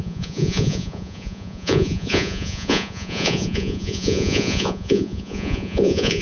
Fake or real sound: fake